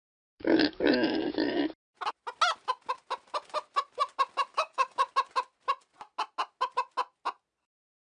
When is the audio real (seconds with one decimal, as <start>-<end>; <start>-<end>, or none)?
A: 0.8-4.5; 5.1-8.1